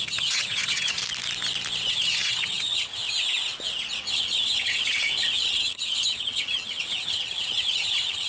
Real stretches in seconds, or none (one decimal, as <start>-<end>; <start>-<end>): 1.0-1.9; 3.0-4.0